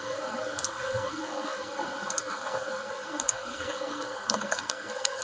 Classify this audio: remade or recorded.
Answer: remade